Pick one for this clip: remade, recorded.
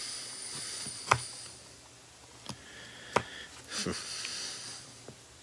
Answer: recorded